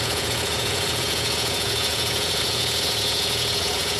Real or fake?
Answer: fake